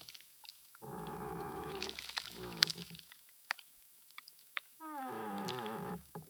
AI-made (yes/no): yes